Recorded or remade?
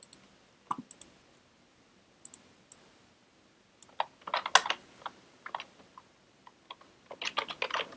recorded